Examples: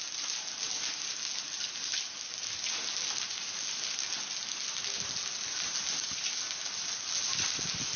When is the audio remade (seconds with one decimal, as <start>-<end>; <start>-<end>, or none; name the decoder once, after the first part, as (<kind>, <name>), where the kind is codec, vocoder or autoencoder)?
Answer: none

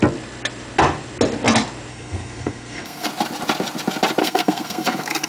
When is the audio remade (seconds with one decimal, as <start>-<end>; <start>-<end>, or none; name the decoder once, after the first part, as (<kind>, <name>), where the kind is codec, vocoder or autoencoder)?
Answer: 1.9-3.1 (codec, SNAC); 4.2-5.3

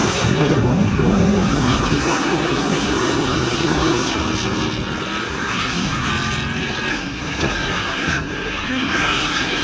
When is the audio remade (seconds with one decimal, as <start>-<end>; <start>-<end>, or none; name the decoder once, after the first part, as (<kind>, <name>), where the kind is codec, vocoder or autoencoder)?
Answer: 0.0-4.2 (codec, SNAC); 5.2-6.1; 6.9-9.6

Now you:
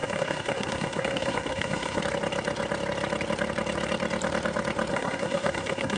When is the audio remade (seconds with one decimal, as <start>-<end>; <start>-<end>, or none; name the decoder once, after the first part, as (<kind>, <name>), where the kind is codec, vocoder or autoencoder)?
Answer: 0.0-2.0 (codec, SNAC); 4.9-6.0

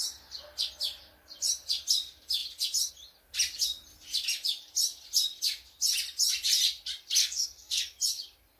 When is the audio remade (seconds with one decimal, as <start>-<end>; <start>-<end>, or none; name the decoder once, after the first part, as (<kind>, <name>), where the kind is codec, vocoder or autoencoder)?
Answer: 7.2-7.8 (codec, SNAC)

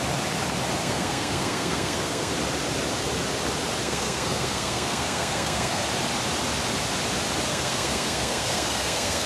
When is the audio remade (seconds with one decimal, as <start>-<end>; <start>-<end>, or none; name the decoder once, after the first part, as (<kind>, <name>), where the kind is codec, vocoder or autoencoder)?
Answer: 0.8-2.3 (codec, SNAC); 3.8-5.8; 7.5-9.3